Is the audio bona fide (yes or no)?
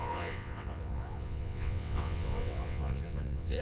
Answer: no